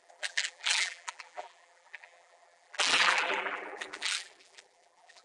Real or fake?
fake